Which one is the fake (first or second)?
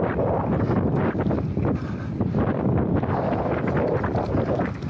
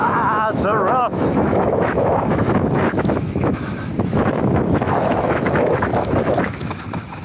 second